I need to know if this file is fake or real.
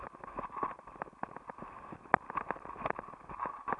real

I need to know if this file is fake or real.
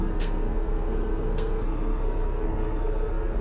fake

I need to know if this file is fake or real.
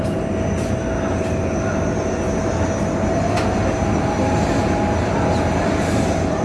real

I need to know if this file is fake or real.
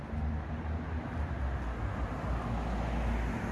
real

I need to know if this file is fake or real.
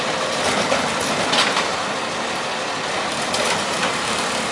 real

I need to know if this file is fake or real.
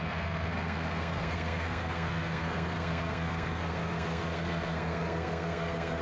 fake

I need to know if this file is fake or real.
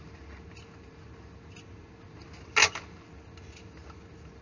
real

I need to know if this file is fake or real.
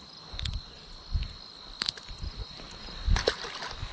real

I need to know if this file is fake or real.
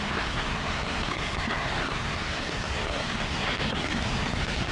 fake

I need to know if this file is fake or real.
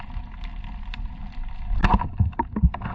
real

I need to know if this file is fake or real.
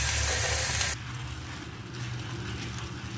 real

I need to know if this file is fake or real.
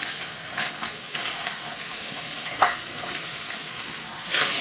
fake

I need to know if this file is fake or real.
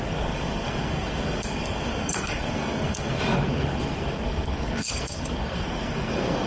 fake